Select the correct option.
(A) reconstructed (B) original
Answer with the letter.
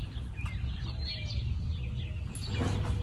B